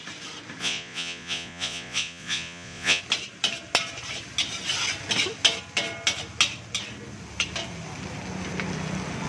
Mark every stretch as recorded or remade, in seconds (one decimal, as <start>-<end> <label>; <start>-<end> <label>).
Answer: 0.0-0.6 recorded; 0.6-3.0 remade; 3.0-9.3 recorded